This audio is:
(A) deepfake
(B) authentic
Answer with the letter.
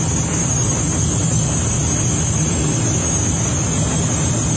B